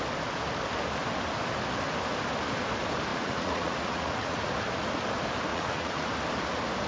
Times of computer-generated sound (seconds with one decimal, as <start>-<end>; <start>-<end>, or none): 3.1-4.5; 5.5-6.1